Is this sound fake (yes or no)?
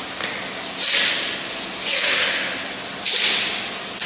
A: no